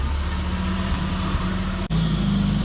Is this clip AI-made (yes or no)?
no